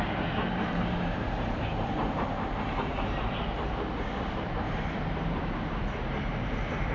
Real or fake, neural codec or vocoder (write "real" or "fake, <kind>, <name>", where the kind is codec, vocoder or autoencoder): fake, vocoder, BigVGAN v2